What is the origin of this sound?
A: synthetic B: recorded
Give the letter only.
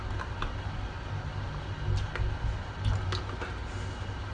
B